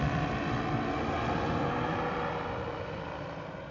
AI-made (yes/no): no